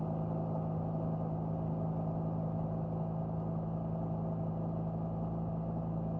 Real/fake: real